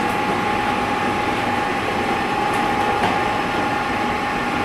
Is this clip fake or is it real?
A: real